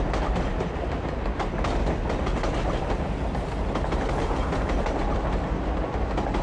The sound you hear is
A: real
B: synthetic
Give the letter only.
A